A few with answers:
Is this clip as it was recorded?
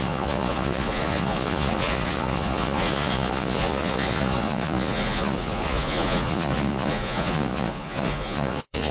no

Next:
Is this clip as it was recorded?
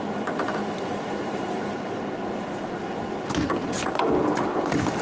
yes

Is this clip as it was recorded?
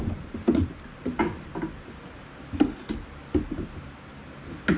yes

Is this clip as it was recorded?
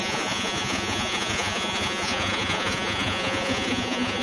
no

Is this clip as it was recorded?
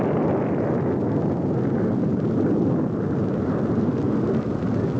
yes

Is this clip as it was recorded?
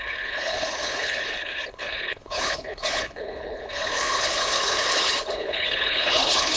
no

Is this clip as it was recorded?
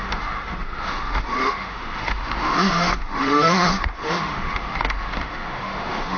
no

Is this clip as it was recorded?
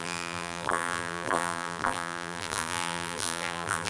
no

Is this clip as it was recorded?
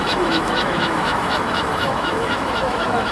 no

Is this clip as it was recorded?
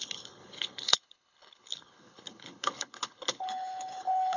no